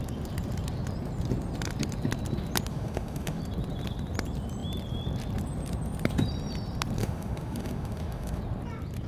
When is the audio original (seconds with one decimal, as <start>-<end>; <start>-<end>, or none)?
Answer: 0.0-2.7; 3.4-7.0; 8.4-9.1